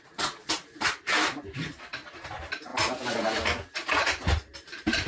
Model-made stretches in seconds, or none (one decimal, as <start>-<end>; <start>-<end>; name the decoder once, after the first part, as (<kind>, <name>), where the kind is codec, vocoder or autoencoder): 0.0-2.7 (vocoder, BigVGAN v2); 4.0-5.1